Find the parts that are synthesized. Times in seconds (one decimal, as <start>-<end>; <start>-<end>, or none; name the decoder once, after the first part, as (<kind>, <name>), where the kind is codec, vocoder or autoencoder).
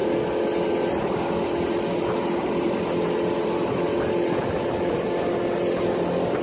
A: none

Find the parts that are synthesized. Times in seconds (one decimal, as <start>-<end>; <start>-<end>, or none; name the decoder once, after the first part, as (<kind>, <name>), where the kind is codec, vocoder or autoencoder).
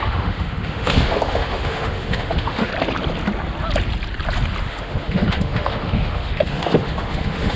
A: 0.0-2.7 (autoencoder, DAC-VAE); 4.6-7.6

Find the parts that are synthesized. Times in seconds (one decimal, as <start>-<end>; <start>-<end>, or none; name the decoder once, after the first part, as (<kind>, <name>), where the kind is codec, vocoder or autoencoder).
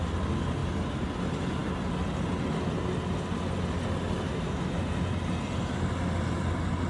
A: none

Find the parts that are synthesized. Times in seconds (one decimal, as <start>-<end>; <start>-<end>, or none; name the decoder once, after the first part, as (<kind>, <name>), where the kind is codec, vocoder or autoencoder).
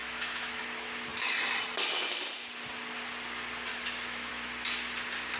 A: 0.0-0.6 (autoencoder, DAC-VAE); 3.7-4.3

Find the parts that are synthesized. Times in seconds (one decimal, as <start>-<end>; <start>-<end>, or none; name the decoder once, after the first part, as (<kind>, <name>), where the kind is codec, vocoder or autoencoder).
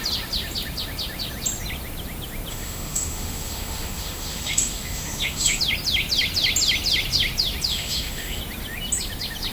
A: 2.5-5.6 (autoencoder, DAC-VAE); 7.7-8.4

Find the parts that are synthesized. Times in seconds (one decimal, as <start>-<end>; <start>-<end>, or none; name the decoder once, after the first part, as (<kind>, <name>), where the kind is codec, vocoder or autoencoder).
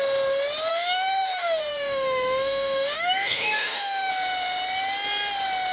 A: 0.7-4.1 (autoencoder, DAC-VAE)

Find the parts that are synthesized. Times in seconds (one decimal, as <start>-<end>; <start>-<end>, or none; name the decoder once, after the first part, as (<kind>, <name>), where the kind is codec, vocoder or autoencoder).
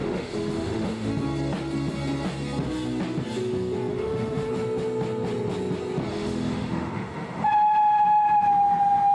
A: 0.0-1.1 (autoencoder, DAC-VAE); 3.9-4.5; 6.1-7.5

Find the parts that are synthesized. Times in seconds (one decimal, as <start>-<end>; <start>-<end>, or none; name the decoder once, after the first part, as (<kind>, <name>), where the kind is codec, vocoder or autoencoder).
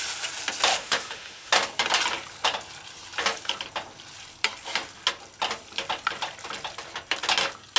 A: 0.7-1.5 (autoencoder, DAC-VAE)